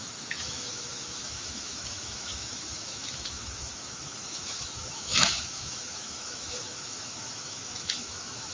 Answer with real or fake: fake